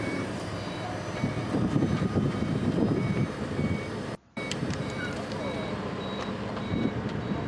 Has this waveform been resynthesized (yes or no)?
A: yes